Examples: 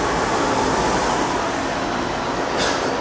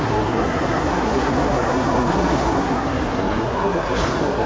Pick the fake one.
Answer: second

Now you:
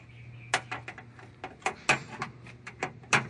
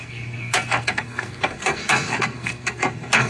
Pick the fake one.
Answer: second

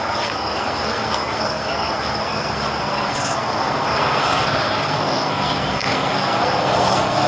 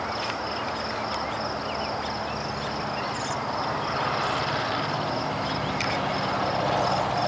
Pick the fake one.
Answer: first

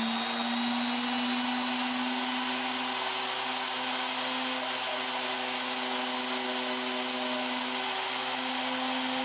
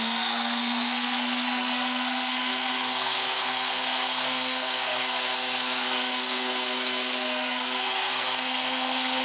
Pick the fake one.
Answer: second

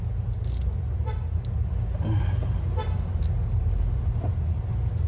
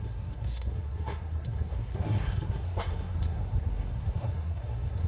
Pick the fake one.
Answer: second